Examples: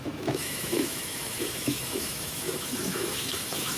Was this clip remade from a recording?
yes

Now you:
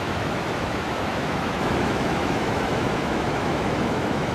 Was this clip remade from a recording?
yes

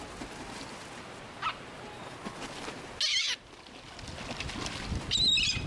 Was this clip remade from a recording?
no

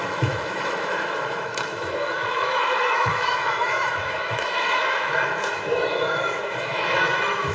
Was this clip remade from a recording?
yes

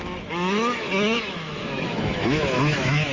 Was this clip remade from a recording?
yes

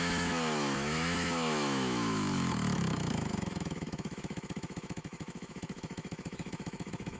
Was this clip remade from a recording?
yes